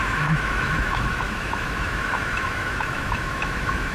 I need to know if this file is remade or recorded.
remade